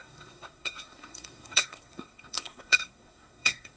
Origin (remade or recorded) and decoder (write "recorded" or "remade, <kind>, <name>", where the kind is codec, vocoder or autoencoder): remade, codec, SNAC